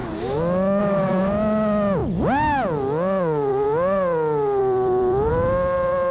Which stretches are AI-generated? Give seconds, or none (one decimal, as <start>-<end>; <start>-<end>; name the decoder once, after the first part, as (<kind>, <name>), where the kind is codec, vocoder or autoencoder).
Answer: 4.6-5.3 (vocoder, BigVGAN v2)